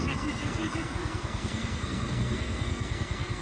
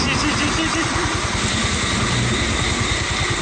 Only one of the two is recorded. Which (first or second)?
second